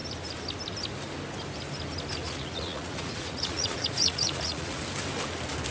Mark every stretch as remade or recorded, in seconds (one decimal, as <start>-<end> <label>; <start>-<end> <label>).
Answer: 0.0-2.2 recorded; 2.2-4.8 remade; 4.8-5.7 recorded

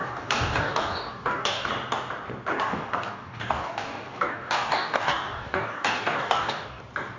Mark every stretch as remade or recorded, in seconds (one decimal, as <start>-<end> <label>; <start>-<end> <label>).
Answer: 0.0-1.7 remade; 1.7-2.5 recorded; 2.5-6.8 remade; 6.8-7.2 recorded

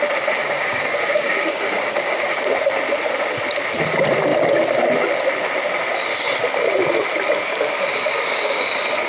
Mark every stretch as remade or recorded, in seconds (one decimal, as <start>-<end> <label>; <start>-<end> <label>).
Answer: 0.0-0.4 recorded; 0.4-2.4 remade; 2.4-7.4 recorded; 7.4-8.6 remade; 8.6-9.1 recorded

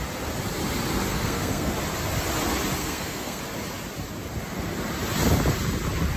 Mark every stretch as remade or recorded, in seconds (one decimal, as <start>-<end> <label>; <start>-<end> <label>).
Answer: 0.0-1.1 recorded; 1.1-1.7 remade; 1.7-2.8 recorded; 2.8-3.4 remade; 3.4-6.2 recorded

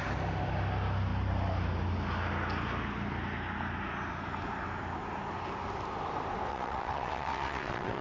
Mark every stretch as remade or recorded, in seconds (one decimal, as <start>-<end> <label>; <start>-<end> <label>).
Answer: 0.0-6.5 recorded; 6.5-8.0 remade

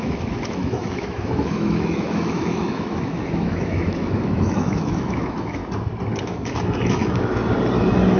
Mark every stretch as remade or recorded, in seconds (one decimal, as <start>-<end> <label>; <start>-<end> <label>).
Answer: 0.0-5.6 remade; 5.6-6.2 recorded; 6.2-7.4 remade; 7.4-8.2 recorded

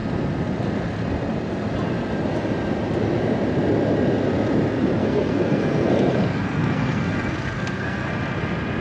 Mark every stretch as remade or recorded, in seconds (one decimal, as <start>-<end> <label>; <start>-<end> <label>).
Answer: 0.0-5.0 recorded; 5.0-8.1 remade; 8.1-8.8 recorded